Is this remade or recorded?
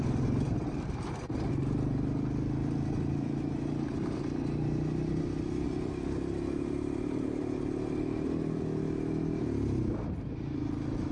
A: recorded